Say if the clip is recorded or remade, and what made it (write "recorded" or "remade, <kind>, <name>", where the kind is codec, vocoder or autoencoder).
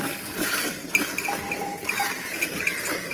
remade, vocoder, BigVGAN v2